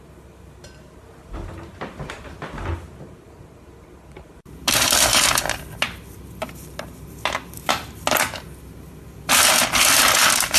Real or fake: real